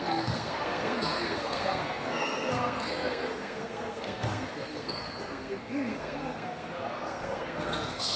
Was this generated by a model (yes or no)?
yes